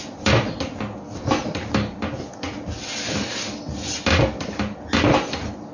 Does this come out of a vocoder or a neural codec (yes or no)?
no